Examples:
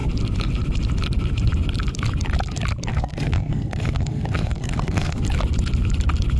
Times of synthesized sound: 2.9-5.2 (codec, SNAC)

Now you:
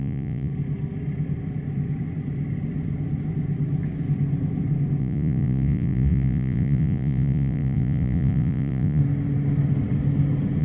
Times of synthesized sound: 0.0-0.5 (vocoder, Vocos); 5.0-9.0

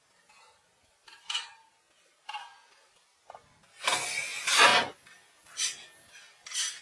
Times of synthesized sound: none

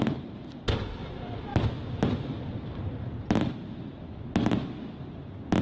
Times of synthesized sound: none